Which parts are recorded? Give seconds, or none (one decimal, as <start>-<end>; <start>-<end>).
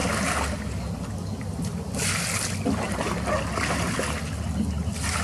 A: 0.0-5.2